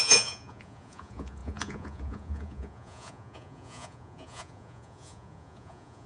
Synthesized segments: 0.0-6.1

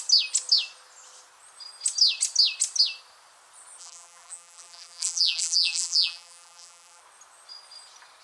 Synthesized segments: 3.8-7.0

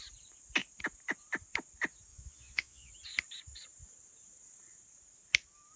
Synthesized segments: 2.1-2.9